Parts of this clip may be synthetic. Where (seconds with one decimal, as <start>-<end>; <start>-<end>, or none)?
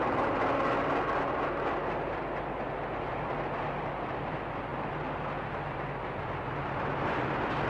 none